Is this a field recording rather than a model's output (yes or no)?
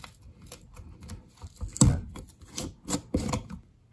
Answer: yes